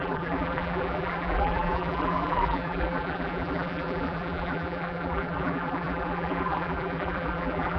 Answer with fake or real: fake